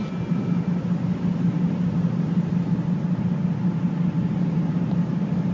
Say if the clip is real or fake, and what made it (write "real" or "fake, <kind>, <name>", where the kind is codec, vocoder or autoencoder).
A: real